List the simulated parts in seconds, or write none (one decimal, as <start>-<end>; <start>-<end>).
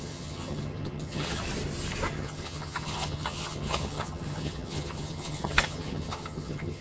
0.0-1.4; 2.1-6.8